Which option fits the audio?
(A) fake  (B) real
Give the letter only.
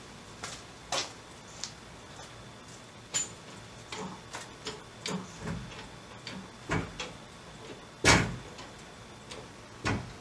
B